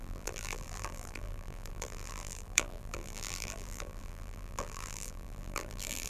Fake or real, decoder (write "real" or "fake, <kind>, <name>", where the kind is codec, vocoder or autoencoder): fake, vocoder, BigVGAN v2